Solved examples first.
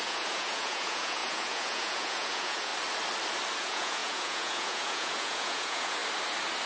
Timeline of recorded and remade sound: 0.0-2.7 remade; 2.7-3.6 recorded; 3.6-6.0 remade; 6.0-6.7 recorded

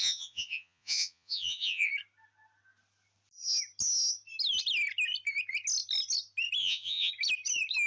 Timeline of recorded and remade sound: 0.0-1.9 remade; 1.9-6.6 recorded; 6.6-7.1 remade; 7.1-7.9 recorded

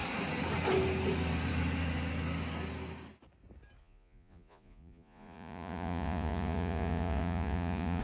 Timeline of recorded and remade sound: 0.0-3.8 recorded; 3.8-8.0 remade

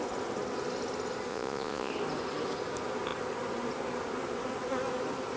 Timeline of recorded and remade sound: 0.0-1.3 recorded; 1.3-1.9 remade; 1.9-5.4 recorded

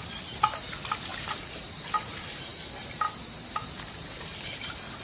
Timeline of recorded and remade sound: 0.0-5.0 recorded

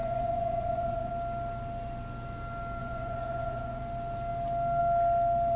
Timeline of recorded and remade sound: 0.0-1.1 remade; 1.1-2.8 recorded; 2.8-3.8 remade; 3.8-5.6 recorded

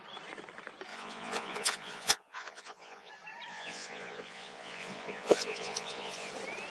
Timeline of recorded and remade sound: 0.0-0.9 recorded; 0.9-3.1 remade; 3.1-3.5 recorded; 3.5-6.3 remade; 6.3-6.7 recorded

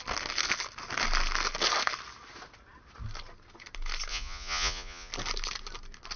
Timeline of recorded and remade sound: 0.0-4.1 recorded; 4.1-5.1 remade; 5.1-6.2 recorded